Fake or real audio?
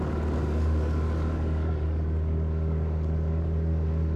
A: fake